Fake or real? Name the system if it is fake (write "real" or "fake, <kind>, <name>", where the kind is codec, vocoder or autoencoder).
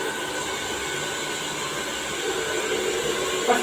real